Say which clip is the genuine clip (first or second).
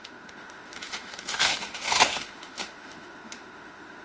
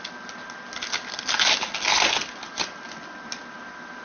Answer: second